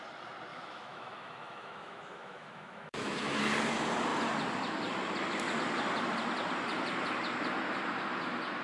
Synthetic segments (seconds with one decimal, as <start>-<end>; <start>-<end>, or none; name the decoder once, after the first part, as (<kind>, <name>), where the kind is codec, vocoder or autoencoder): 0.5-3.4 (autoencoder, DAC-VAE)